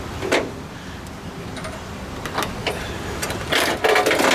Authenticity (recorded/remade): recorded